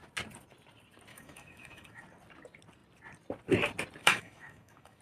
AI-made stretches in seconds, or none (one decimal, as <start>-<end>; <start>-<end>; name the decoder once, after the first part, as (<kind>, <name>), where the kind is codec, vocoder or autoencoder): 1.1-2.0 (autoencoder, DAC-VAE); 4.0-5.0